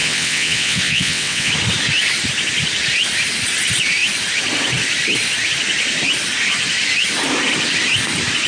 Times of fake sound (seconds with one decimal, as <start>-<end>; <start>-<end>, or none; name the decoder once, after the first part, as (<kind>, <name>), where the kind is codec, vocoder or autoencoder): 0.0-1.5 (vocoder, WaveNeXt)